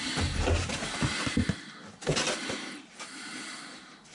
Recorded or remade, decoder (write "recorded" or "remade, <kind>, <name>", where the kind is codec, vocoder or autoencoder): remade, vocoder, BigVGAN v2